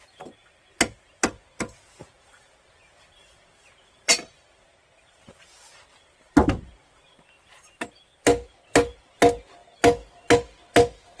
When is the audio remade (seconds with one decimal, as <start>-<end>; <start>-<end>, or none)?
none

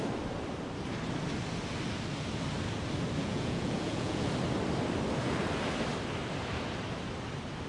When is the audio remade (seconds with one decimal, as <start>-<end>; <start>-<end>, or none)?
3.2-4.3

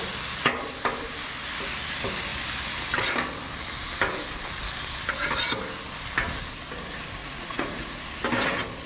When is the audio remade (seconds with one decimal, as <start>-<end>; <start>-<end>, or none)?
7.2-8.0

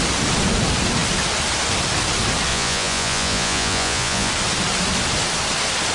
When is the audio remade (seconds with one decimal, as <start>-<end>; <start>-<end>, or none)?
2.5-4.3